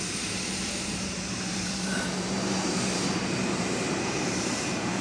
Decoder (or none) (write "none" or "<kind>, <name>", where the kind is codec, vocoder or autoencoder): vocoder, BigVGAN v2